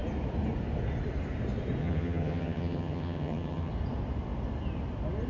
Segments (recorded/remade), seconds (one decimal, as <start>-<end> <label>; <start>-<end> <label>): 0.0-1.8 recorded; 1.8-3.7 remade; 3.7-5.3 recorded